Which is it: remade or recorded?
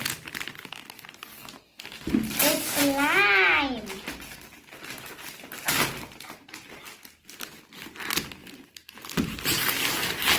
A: recorded